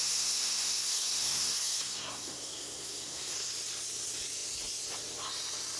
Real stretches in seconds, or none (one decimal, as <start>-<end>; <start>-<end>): 3.5-5.8